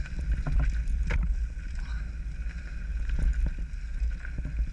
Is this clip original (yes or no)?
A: yes